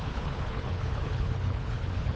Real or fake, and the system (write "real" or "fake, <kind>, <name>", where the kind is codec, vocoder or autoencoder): fake, codec, HILCodec